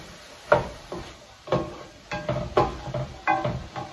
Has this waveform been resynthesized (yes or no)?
no